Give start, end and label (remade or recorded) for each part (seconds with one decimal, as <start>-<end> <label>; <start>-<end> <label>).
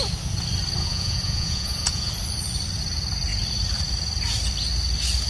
0.0-0.8 recorded; 0.8-2.1 remade; 2.1-5.3 recorded